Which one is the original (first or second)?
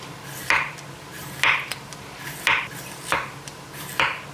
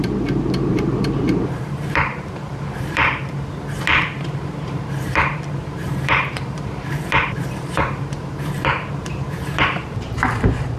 first